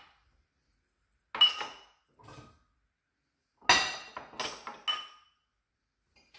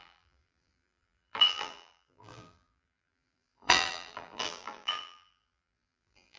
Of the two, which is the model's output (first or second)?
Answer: second